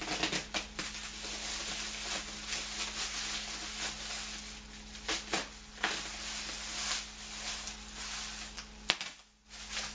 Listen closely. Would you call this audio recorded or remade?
recorded